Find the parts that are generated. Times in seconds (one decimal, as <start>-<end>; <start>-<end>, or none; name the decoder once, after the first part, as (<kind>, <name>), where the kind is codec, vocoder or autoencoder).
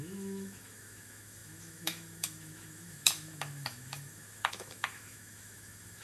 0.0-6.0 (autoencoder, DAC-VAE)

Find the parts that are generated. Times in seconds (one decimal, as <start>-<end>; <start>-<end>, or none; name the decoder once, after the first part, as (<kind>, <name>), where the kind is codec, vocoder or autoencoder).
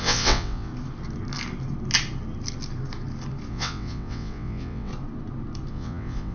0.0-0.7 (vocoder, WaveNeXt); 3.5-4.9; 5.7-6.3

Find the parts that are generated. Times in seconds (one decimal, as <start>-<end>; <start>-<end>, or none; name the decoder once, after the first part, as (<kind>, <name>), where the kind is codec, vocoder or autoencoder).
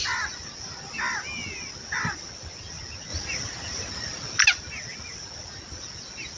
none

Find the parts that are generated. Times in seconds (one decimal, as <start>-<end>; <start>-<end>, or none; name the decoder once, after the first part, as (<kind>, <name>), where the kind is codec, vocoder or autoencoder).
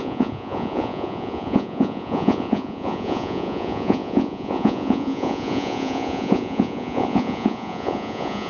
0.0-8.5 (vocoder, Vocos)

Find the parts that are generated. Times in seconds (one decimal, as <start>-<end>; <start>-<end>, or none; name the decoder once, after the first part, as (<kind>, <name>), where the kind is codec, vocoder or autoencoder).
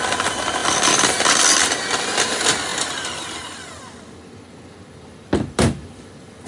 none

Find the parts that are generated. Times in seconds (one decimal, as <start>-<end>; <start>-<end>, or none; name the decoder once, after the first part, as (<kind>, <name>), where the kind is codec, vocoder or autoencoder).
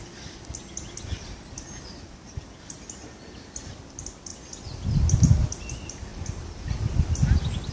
none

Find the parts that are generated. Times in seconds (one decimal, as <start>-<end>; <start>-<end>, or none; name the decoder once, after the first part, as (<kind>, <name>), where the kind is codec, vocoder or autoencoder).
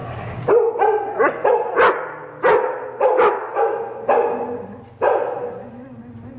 none